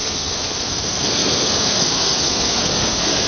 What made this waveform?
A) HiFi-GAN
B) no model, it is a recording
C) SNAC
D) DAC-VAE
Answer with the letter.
C